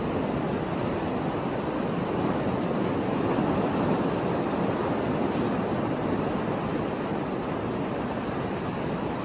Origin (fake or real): real